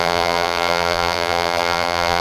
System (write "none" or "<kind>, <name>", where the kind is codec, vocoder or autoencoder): vocoder, BigVGAN v2